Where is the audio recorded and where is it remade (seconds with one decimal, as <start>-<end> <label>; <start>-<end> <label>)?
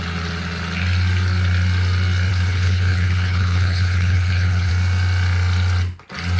0.0-2.3 recorded; 2.3-4.7 remade; 4.7-6.4 recorded